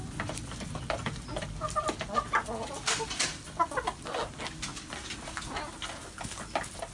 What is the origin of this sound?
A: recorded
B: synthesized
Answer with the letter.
A